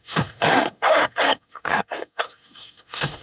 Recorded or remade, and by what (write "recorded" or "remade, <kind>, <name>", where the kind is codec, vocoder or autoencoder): remade, codec, SNAC